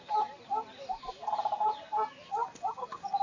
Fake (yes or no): no